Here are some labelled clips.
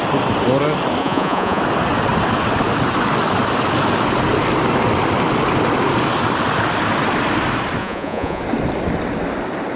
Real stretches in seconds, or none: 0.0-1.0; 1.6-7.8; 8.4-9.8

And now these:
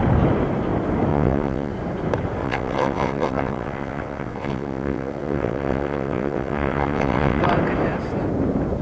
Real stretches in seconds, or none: 0.0-1.1; 1.7-2.4; 7.4-8.8